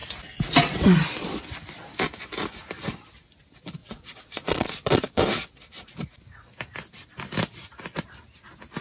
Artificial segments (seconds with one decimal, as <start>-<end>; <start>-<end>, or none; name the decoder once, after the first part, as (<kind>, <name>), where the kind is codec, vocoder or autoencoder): 3.8-5.2 (vocoder, Vocos)